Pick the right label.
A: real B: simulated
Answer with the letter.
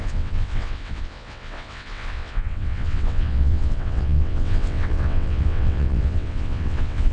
B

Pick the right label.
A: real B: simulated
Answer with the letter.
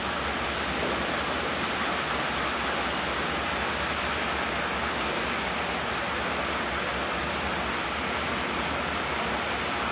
A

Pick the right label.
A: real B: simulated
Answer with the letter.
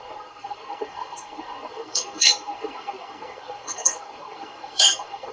B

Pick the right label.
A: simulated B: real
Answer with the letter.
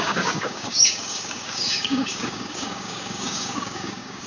A